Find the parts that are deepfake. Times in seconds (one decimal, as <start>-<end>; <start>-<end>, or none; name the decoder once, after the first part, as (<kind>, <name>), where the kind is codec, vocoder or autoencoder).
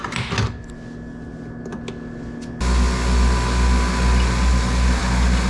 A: none